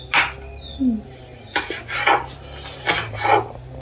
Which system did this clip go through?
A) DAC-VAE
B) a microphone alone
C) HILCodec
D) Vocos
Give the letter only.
B